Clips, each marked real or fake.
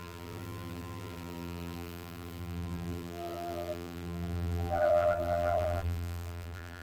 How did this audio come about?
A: fake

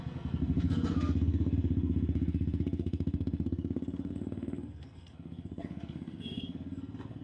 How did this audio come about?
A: fake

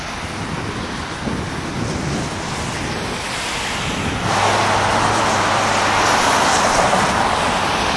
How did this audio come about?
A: real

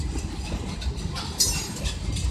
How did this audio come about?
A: real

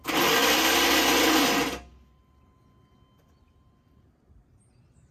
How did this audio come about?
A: real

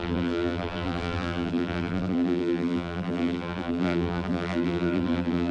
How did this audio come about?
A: fake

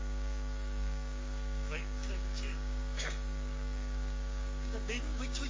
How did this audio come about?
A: fake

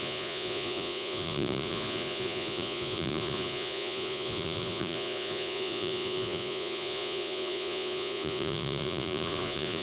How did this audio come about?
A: fake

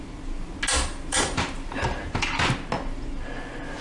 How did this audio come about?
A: real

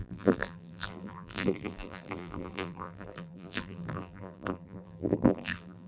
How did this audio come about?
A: fake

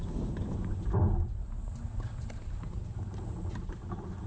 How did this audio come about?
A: real